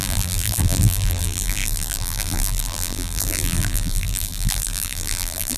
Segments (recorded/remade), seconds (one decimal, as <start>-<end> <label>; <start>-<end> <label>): 0.0-5.6 remade